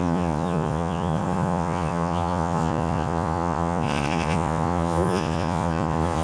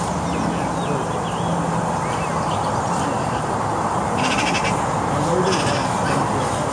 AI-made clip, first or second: first